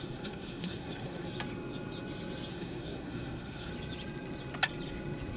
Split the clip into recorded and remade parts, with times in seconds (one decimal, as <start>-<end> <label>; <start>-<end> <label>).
0.0-1.3 remade; 1.3-2.5 recorded; 2.5-3.7 remade; 3.7-5.4 recorded